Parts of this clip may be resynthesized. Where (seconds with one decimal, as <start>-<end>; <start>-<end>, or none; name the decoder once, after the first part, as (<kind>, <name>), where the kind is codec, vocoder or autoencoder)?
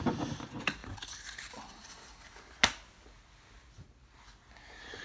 0.8-2.3 (vocoder, BigVGAN v2)